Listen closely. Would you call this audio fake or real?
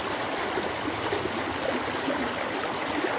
real